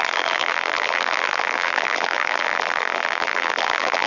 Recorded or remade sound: remade